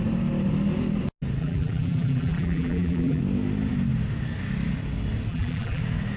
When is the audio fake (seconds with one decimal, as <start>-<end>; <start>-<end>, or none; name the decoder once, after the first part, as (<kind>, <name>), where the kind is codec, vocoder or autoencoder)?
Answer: 1.4-3.2 (vocoder, BigVGAN v2); 5.3-5.8